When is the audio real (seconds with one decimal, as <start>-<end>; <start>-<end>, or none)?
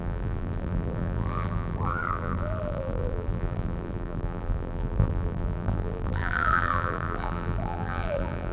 none